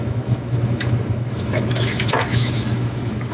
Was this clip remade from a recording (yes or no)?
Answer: yes